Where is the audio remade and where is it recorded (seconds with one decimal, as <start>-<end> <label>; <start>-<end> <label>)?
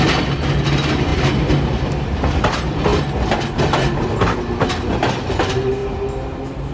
0.0-6.7 recorded